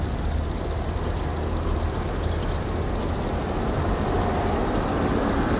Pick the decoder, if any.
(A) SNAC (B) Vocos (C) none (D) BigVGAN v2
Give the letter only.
C